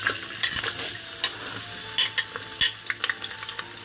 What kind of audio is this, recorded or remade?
recorded